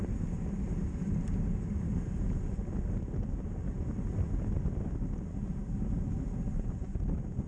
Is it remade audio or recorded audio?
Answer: recorded